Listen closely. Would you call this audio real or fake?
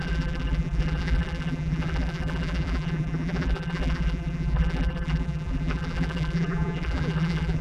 fake